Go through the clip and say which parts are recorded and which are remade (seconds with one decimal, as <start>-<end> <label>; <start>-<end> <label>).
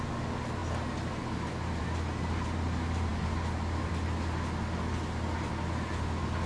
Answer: 0.0-6.5 recorded